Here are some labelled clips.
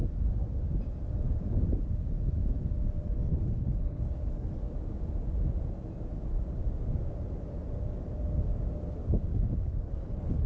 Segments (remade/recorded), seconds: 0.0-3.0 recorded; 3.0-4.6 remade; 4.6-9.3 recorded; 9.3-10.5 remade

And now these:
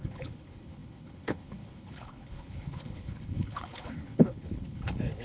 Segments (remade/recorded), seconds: 0.0-5.2 remade